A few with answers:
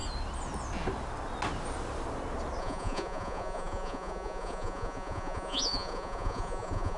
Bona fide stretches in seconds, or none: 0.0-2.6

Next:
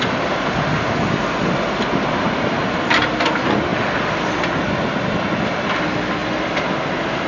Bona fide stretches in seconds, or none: 0.0-7.3

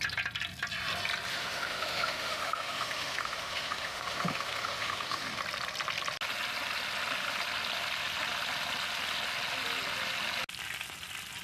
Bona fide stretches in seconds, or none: 0.0-1.3; 5.4-11.4

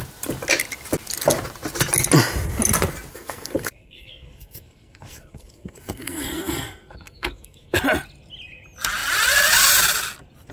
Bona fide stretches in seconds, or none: 0.0-3.1; 7.8-10.5

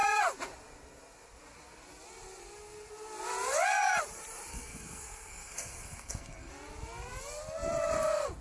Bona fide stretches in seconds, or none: 0.0-4.5; 6.5-8.4